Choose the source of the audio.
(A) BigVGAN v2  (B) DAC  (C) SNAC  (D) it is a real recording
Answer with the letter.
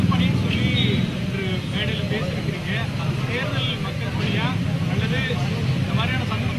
D